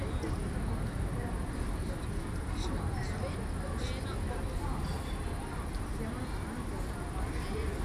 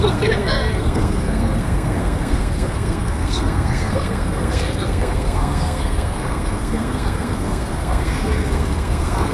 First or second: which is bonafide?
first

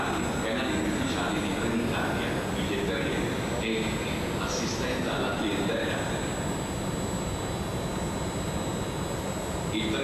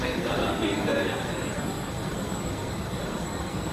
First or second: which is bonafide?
first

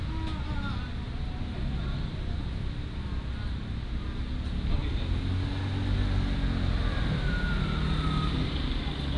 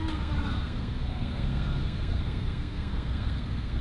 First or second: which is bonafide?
first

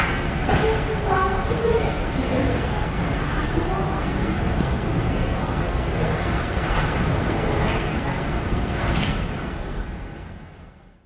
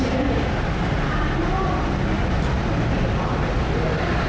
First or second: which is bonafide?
second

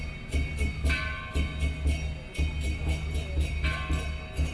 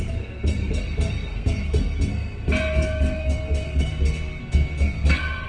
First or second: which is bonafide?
first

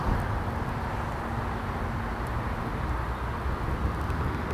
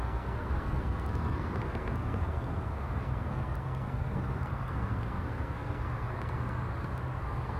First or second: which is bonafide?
first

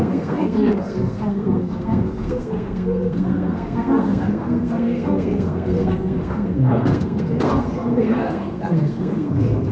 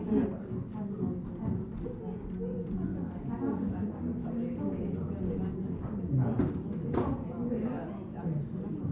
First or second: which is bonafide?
second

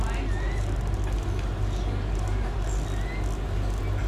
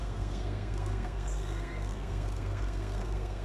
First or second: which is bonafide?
first